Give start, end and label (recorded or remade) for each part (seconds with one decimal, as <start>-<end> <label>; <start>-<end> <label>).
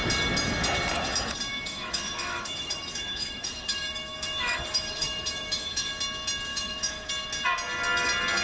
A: 0.0-1.5 recorded; 1.5-5.9 remade; 5.9-6.5 recorded; 6.5-7.1 remade; 7.1-8.4 recorded